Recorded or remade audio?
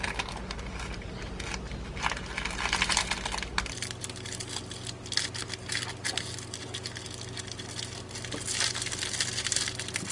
recorded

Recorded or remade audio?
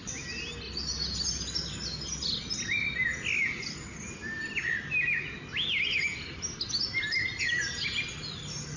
recorded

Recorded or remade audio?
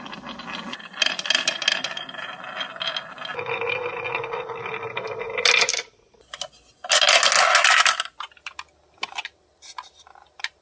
recorded